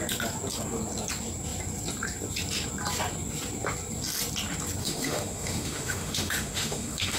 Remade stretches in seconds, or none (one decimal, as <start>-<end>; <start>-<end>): 4.8-7.2